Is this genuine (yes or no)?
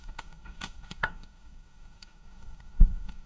no